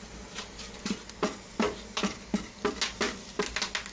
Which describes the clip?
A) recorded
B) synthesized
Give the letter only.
A